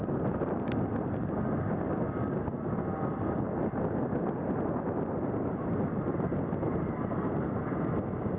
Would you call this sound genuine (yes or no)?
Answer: yes